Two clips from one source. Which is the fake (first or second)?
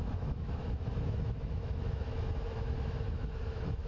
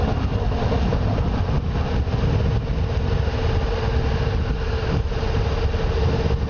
first